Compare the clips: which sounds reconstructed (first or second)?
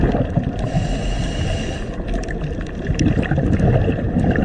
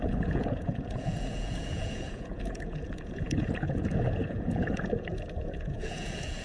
second